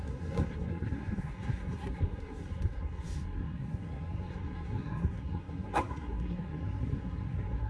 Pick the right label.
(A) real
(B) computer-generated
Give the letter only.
B